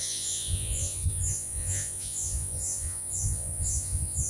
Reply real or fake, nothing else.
fake